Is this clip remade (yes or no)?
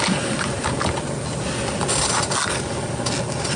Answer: no